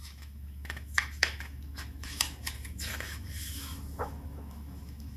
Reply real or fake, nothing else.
fake